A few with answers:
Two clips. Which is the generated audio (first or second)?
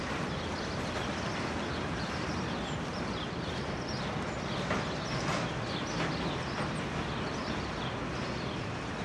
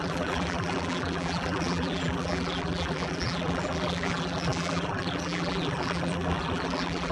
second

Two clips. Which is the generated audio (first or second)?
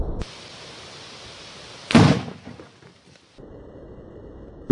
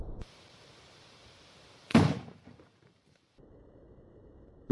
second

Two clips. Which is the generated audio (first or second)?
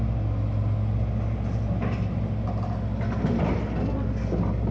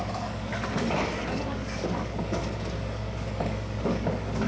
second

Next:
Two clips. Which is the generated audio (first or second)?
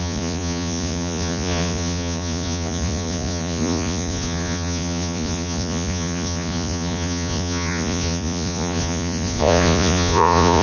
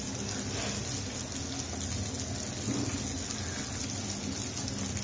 first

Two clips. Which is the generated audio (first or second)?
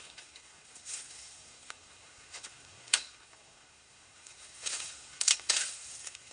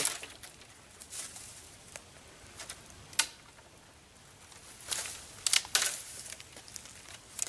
first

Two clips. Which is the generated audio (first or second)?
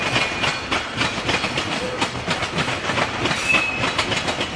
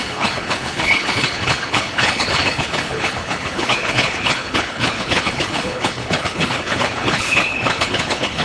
second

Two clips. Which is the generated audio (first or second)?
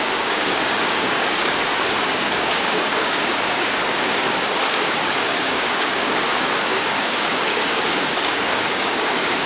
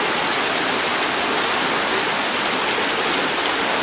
first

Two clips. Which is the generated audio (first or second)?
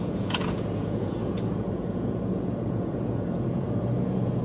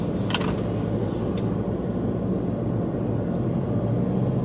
first